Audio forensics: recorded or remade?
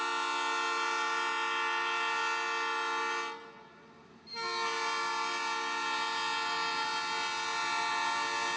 recorded